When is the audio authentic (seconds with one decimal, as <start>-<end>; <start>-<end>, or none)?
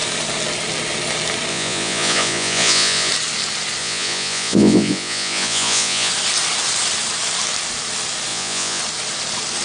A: 0.0-1.5; 3.1-3.8; 6.1-8.3; 8.8-9.6